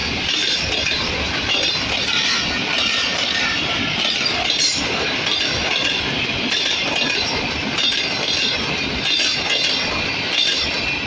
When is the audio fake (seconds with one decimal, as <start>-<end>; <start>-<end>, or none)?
0.0-1.5; 3.1-6.0